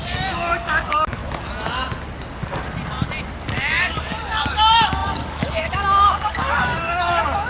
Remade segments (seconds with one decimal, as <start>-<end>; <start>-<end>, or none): 0.0-1.2; 3.4-7.5